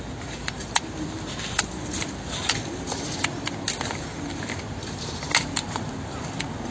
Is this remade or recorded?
recorded